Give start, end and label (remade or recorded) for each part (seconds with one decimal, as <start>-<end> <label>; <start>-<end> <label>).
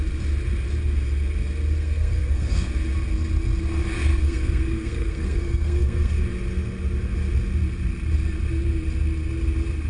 0.0-1.8 recorded; 1.8-2.7 remade; 2.7-4.1 recorded; 4.1-6.2 remade; 6.2-9.9 recorded